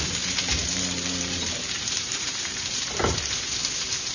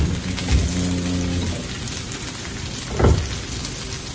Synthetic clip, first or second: first